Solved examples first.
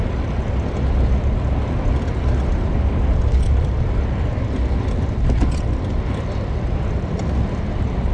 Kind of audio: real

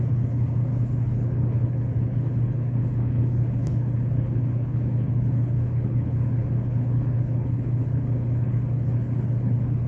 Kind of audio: fake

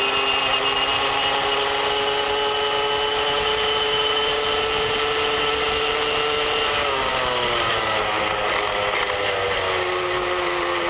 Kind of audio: real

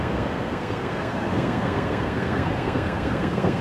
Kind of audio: fake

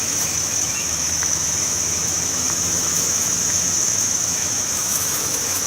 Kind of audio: fake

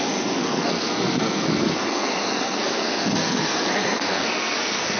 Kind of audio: fake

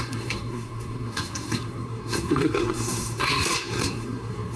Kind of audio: fake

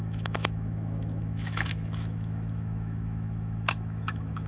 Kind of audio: fake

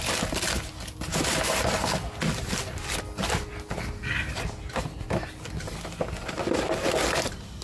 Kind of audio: real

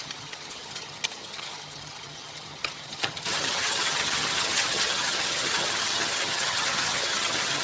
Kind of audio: fake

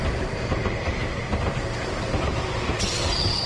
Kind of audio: real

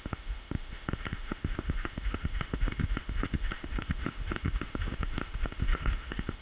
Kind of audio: fake